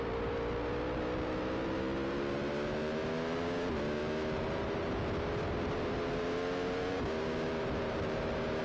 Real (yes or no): no